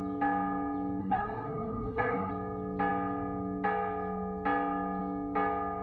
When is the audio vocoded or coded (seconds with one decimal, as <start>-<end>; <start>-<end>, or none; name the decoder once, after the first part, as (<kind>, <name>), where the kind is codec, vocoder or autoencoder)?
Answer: 1.0-2.3 (codec, SNAC)